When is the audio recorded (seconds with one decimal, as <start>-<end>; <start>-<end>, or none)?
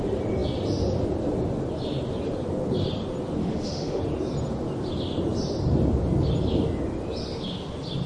0.0-3.4; 4.0-8.1